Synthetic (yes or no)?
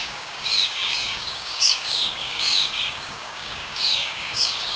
yes